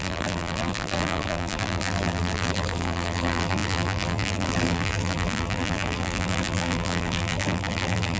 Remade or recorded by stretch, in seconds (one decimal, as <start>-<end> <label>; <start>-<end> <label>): 0.0-8.2 remade